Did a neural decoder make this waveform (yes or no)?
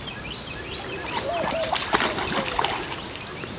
no